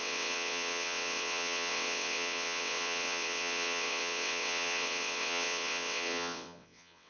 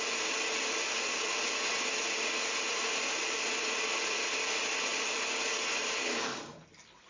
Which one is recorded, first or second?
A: second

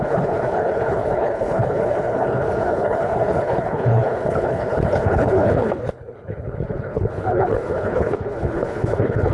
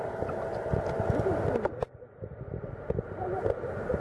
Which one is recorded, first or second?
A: second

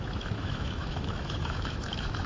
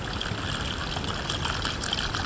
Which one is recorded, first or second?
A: second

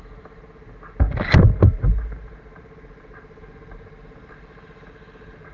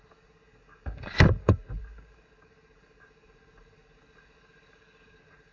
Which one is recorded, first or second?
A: first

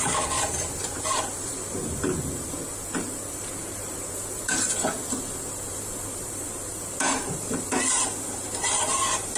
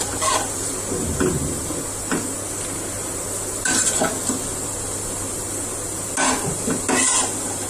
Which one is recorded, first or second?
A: second